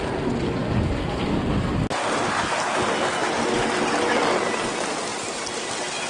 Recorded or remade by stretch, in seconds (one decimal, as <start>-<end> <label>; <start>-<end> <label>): 0.0-6.1 recorded